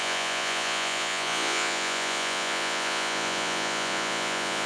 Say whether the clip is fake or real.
fake